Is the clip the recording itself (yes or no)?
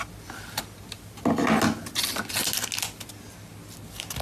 yes